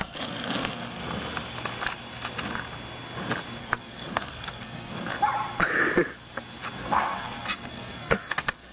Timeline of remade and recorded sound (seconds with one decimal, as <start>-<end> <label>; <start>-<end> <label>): 0.0-1.0 remade; 1.0-3.6 recorded; 3.6-5.1 remade; 5.1-6.8 recorded; 6.8-8.7 remade

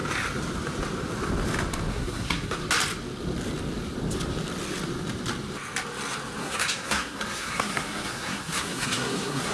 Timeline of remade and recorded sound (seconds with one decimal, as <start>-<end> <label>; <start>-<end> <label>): 0.0-1.9 recorded; 1.9-2.6 remade; 2.6-6.4 recorded; 6.4-9.5 remade